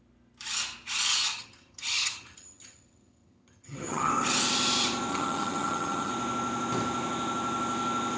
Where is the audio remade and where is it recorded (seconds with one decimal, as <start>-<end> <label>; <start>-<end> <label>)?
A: 0.0-1.1 recorded; 1.1-4.1 remade; 4.1-5.1 recorded; 5.1-6.1 remade; 6.1-8.2 recorded